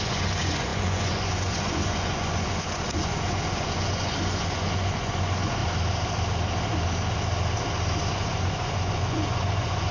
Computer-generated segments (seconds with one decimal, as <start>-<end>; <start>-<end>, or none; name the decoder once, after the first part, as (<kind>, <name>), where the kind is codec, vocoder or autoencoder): 0.0-5.6 (vocoder, Vocos); 8.0-9.9